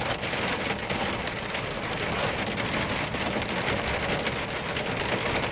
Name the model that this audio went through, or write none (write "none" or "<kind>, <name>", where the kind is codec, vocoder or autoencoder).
none